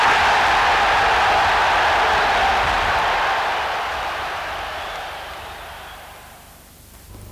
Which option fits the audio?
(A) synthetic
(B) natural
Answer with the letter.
B